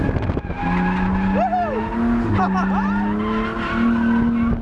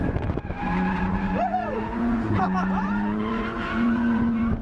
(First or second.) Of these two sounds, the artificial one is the second